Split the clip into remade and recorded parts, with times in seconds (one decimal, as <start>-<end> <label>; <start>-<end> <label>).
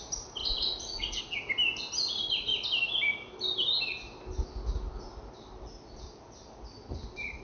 0.0-0.4 recorded; 0.4-1.2 remade; 1.2-7.4 recorded